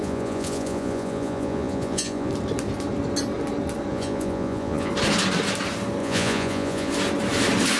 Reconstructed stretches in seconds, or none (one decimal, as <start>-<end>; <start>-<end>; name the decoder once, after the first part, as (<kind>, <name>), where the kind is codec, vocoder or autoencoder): 0.0-2.3 (vocoder, Vocos); 3.9-4.9; 6.0-6.9